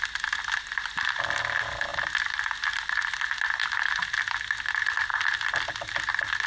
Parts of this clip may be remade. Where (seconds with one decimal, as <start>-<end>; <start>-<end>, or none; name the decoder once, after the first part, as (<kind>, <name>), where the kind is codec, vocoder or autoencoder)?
none